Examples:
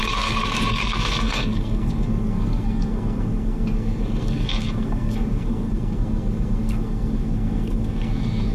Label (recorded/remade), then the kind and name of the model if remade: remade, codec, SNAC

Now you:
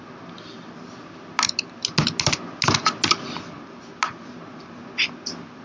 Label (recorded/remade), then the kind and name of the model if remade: recorded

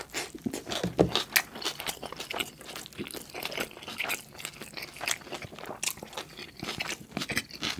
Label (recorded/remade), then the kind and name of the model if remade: recorded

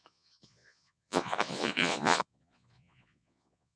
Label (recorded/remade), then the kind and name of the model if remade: remade, vocoder, Vocos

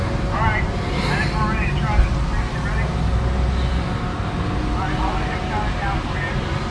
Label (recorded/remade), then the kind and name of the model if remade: recorded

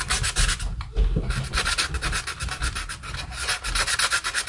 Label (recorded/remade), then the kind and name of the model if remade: recorded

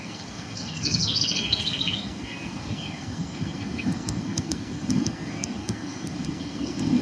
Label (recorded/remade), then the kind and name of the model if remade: remade, codec, SNAC